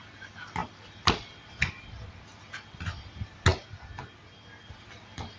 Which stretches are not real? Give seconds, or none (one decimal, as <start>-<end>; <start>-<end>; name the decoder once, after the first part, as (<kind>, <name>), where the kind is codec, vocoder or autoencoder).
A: none